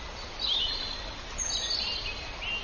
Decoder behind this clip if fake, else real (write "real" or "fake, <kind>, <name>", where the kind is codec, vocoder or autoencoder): real